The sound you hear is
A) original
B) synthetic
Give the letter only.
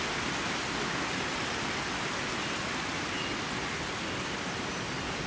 A